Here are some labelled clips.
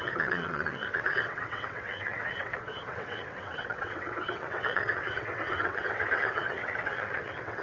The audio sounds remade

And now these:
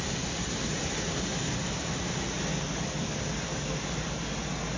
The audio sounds recorded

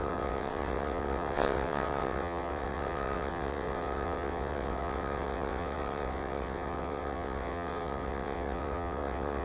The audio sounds remade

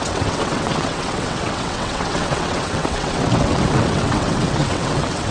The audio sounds remade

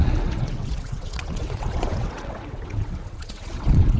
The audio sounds remade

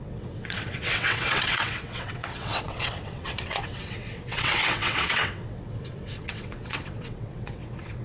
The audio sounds remade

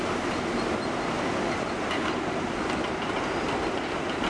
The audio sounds recorded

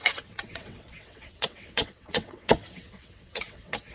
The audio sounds remade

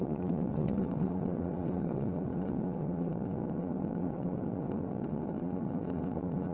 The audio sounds remade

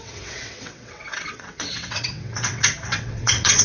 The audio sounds remade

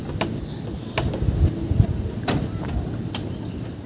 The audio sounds recorded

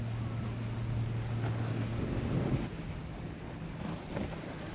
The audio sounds recorded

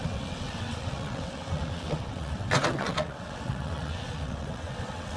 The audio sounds remade